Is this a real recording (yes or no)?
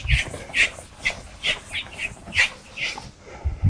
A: yes